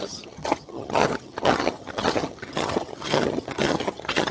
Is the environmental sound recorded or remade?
remade